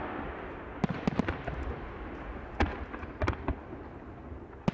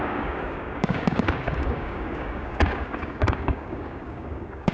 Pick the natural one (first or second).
first